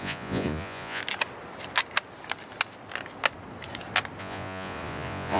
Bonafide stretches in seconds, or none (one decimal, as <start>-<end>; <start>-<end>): 1.0-4.2